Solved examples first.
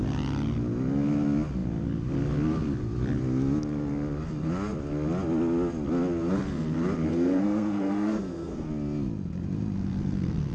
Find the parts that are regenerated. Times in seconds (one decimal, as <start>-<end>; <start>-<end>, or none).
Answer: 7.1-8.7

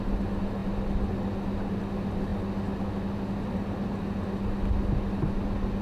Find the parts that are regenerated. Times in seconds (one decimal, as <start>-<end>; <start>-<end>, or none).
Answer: none

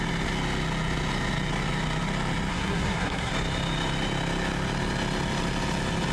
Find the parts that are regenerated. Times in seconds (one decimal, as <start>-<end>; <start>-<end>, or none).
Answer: 2.5-3.3

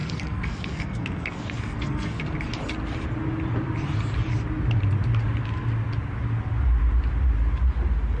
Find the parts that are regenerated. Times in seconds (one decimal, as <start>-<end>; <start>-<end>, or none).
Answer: 0.0-2.2